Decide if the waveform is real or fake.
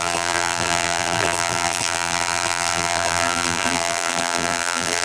fake